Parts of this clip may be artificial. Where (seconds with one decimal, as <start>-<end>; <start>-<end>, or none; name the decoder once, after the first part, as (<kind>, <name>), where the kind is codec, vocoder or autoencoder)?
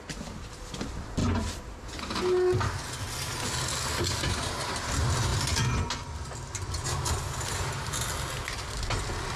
none